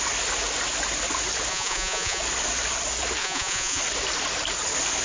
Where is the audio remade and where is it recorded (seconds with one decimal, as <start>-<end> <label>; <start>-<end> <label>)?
0.0-1.5 recorded; 1.5-2.2 remade; 2.2-3.2 recorded; 3.2-3.8 remade; 3.8-5.0 recorded